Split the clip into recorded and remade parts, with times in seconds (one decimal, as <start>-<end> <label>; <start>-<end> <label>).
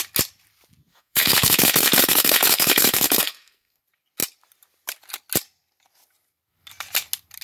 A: 0.0-0.9 recorded; 0.9-3.8 remade; 3.8-7.4 recorded